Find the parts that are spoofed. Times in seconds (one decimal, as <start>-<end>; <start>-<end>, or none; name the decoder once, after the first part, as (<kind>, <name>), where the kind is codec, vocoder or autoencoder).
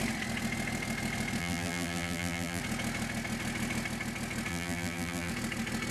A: 1.4-2.6 (vocoder, BigVGAN v2); 4.5-5.3